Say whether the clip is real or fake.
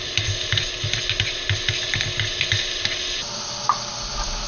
real